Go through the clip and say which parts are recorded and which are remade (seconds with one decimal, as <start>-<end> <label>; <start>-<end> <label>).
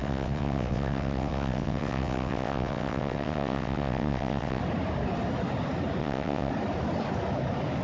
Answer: 0.0-4.6 remade; 4.6-6.0 recorded; 6.0-6.5 remade; 6.5-7.8 recorded